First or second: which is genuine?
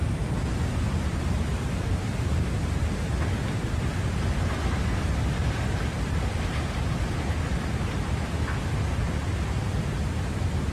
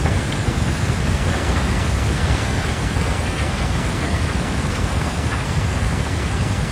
first